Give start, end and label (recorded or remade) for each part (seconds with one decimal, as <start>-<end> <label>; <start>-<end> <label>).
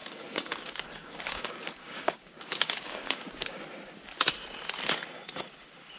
0.0-3.6 remade; 3.6-6.0 recorded